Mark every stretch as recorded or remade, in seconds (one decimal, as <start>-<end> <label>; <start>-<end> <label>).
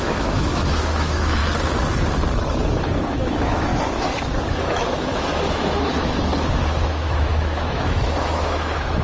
0.0-1.4 remade; 1.4-2.8 recorded; 2.8-3.7 remade; 3.7-4.6 recorded; 4.6-6.3 remade; 6.3-6.9 recorded; 6.9-9.0 remade